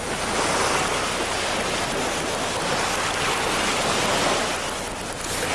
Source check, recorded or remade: recorded